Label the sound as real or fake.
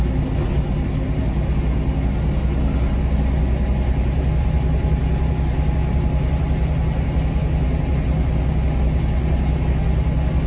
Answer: real